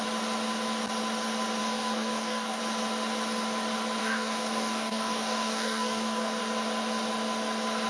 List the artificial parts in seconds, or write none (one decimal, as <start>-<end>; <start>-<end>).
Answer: 1.6-2.6; 4.0-6.4